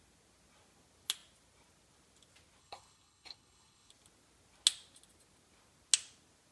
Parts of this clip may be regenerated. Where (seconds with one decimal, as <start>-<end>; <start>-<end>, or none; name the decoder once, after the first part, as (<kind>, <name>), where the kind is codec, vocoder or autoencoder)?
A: 2.6-3.9 (codec, HILCodec)

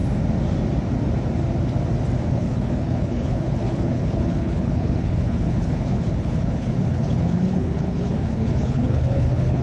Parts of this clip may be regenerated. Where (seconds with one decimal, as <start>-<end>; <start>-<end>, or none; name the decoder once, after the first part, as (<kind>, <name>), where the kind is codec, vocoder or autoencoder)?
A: 2.3-9.6 (codec, HILCodec)

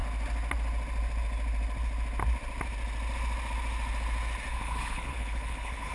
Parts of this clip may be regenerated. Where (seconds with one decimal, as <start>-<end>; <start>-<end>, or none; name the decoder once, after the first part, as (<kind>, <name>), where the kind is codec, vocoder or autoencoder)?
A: 4.5-5.9 (codec, HILCodec)

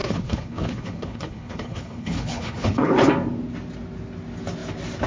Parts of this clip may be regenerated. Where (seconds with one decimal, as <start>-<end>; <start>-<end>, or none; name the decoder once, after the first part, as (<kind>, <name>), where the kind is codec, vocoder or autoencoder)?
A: 0.0-3.1 (codec, HILCodec)

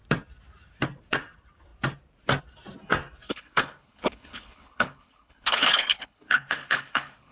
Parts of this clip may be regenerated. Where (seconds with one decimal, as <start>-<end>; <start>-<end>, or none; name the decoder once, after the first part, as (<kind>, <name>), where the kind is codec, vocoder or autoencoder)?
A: 3.3-7.3 (codec, HILCodec)

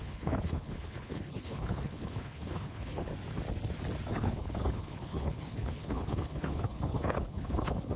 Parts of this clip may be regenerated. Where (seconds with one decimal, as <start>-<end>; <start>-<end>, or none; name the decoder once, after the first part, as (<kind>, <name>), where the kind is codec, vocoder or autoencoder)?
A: 0.0-3.1 (codec, HILCodec); 4.1-8.0

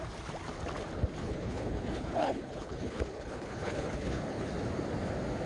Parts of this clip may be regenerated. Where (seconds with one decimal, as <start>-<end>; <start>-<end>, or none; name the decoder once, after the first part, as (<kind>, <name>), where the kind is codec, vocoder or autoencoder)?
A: 1.2-4.5 (codec, HILCodec)

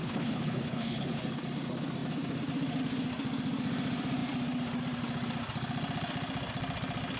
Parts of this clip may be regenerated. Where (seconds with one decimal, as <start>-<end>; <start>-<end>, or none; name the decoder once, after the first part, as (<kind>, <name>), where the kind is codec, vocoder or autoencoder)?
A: 0.0-1.1 (codec, HILCodec)